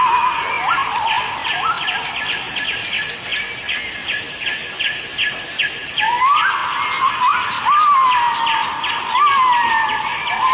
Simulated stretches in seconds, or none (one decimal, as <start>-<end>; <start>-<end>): none